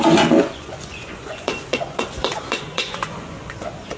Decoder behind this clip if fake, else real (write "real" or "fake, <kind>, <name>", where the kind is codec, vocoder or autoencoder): fake, vocoder, Vocos